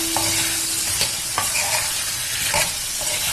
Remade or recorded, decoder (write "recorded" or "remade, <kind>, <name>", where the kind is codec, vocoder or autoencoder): recorded